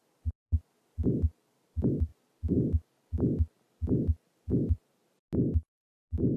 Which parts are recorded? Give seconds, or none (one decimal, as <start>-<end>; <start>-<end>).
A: 2.1-4.5; 5.2-6.4